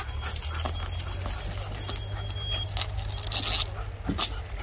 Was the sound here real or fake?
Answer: real